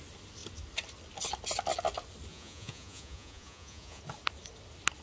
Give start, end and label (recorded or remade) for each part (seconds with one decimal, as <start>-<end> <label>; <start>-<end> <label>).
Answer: 0.0-2.3 recorded; 2.3-4.0 remade; 4.0-5.0 recorded